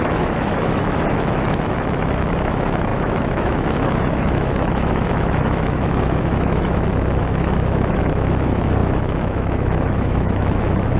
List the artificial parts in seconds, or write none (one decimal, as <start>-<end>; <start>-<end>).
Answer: 0.0-11.0